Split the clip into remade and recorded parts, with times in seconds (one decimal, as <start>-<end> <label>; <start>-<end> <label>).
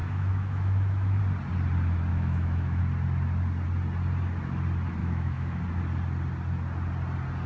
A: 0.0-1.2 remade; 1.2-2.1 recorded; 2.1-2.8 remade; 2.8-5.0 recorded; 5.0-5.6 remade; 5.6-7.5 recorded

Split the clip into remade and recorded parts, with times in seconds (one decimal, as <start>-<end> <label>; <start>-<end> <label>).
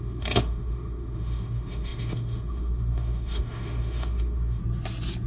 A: 0.0-4.6 remade; 4.6-5.3 recorded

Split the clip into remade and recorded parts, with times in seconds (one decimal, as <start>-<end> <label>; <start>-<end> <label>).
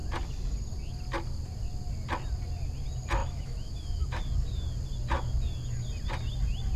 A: 0.0-3.2 recorded; 3.2-4.2 remade; 4.2-6.8 recorded